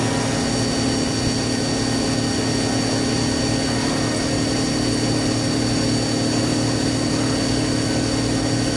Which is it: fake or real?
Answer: real